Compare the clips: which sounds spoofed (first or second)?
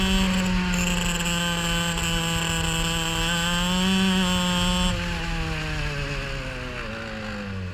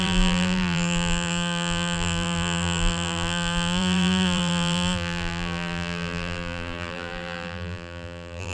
second